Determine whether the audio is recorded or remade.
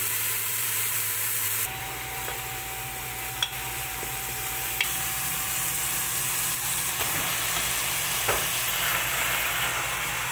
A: remade